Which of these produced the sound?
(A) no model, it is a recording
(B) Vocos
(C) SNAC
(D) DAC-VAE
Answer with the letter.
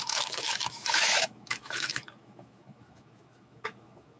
D